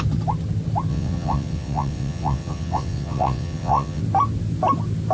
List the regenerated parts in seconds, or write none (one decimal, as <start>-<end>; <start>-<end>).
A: 0.9-4.0